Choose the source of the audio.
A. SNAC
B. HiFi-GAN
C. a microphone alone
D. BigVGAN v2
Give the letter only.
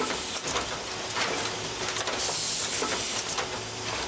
C